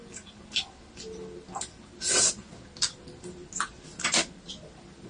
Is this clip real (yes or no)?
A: yes